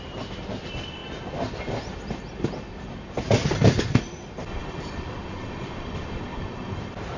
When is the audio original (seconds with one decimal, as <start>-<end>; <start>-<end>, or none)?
1.0-2.1